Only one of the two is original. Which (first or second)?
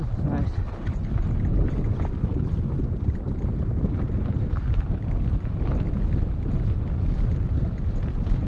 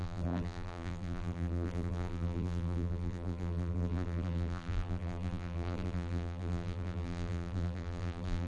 first